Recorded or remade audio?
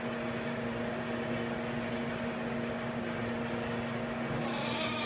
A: recorded